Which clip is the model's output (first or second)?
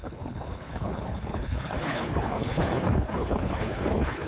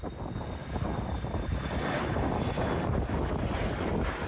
first